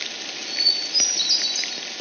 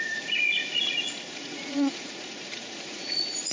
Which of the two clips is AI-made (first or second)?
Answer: second